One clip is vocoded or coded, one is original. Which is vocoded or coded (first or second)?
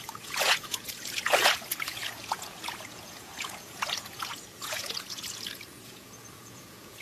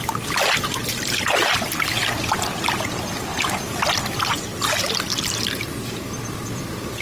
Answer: first